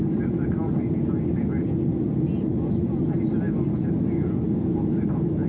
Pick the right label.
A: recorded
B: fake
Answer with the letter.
A